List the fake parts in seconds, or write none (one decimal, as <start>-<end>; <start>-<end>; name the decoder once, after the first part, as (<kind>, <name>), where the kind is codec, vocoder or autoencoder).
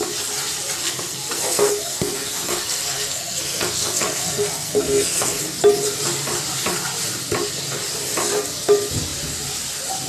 0.8-5.4 (codec, SNAC)